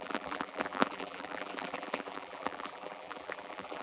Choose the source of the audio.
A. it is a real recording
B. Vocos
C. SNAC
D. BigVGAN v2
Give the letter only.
D